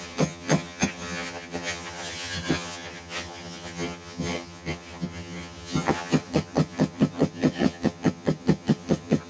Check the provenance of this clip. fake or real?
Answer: fake